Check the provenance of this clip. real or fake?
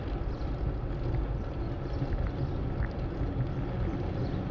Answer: real